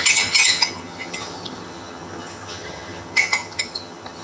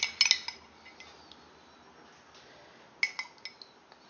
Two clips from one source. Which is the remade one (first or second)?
first